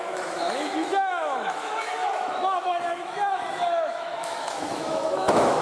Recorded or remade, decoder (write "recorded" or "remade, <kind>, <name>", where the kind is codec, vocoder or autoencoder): remade, autoencoder, DAC-VAE